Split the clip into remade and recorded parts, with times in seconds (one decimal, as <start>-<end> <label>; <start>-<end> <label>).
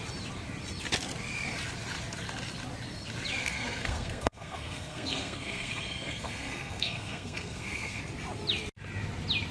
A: 0.0-3.4 recorded; 3.4-8.0 remade; 8.0-9.5 recorded